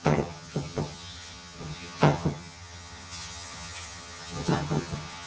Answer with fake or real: fake